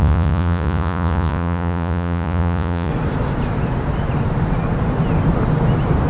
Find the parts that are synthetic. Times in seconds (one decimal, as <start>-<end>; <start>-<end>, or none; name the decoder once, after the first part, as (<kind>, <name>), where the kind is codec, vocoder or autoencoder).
0.0-2.9 (vocoder, Vocos)